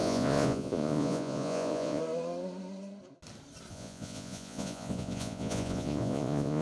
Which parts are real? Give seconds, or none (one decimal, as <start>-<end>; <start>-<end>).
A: 2.0-3.7